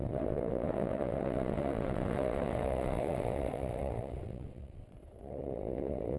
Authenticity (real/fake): fake